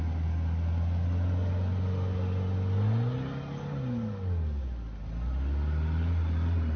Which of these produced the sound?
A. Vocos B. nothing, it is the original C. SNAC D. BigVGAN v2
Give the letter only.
B